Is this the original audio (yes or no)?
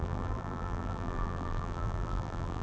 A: no